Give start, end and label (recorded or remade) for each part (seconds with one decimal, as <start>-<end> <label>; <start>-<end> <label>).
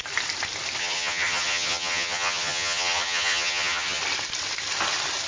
0.0-0.8 recorded; 0.8-4.0 remade; 4.0-5.3 recorded